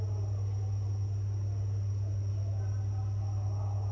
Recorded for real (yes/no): yes